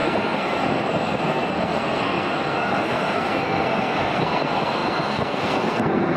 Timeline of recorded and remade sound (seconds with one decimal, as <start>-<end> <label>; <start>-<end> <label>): 0.0-6.2 remade